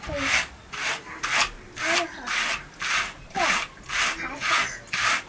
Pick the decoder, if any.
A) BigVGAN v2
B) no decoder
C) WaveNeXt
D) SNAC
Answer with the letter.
B